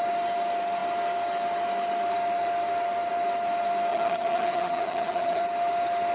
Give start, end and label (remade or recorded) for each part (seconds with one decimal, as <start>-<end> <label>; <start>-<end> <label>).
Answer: 0.0-3.9 recorded; 3.9-5.4 remade; 5.4-6.1 recorded